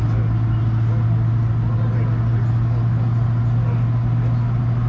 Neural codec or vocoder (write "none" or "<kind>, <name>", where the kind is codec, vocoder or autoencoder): none